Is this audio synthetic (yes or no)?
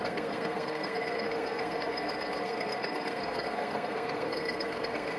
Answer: yes